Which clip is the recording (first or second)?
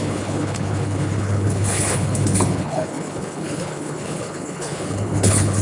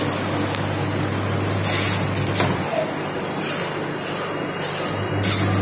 second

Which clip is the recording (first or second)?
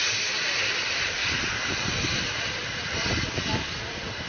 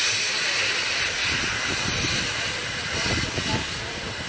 second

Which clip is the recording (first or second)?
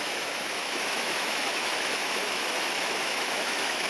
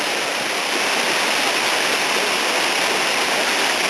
second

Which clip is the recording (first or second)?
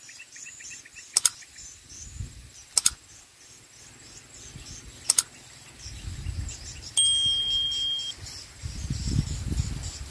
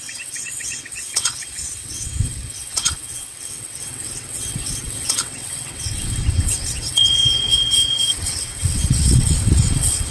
first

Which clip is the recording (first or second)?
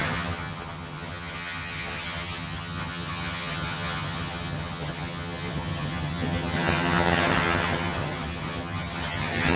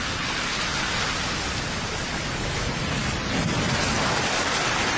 second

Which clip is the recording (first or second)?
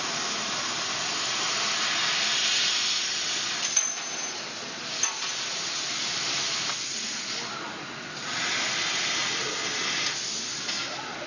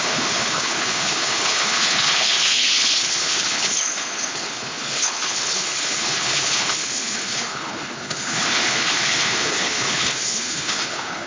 first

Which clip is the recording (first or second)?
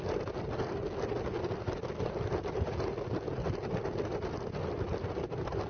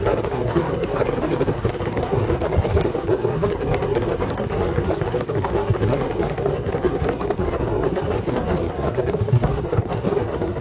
first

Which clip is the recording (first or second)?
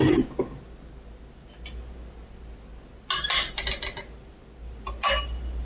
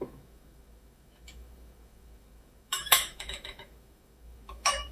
first